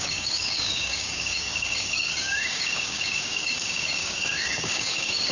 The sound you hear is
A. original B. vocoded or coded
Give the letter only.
B